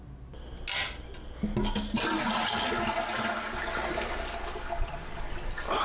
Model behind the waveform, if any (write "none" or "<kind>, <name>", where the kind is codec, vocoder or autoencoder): none